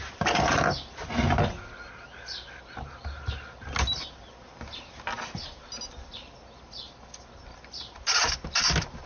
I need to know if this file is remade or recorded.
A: recorded